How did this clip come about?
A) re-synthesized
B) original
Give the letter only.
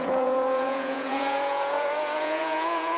A